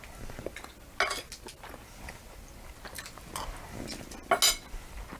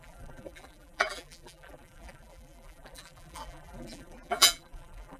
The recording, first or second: first